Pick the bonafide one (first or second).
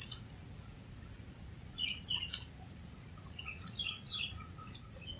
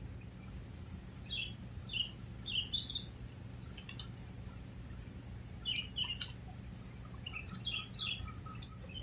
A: second